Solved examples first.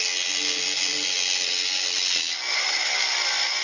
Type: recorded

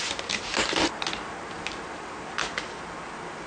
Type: recorded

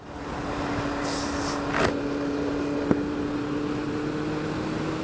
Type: recorded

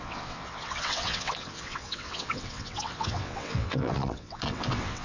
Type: remade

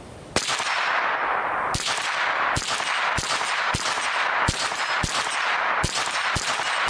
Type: recorded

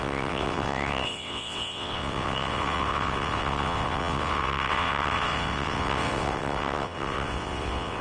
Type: remade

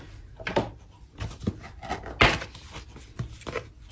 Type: recorded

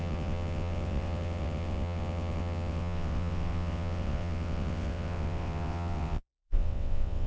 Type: remade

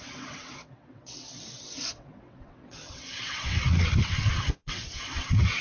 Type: remade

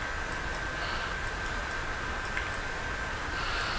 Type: recorded